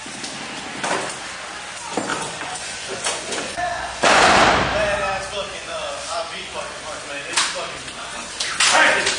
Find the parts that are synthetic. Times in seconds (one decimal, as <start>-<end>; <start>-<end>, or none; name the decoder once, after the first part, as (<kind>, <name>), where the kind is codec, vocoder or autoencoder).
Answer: 2.1-4.3 (vocoder, Vocos); 5.4-6.6